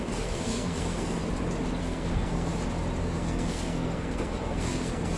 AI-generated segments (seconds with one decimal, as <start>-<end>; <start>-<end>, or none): 0.0-1.2; 1.8-2.5; 3.0-5.2